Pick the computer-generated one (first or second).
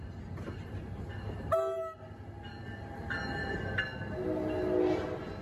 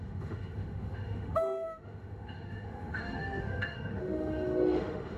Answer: second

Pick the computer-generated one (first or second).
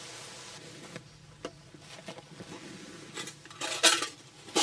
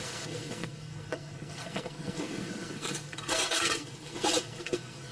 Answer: second